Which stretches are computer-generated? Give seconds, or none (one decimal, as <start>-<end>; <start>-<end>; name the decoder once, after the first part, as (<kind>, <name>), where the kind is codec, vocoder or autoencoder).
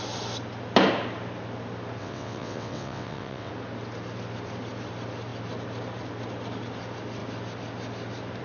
2.0-3.5 (vocoder, WaveNeXt)